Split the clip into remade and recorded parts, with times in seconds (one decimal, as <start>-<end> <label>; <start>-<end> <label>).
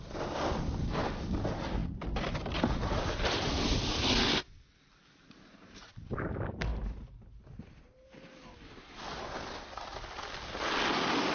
0.0-6.7 recorded; 6.7-8.7 remade; 8.7-11.3 recorded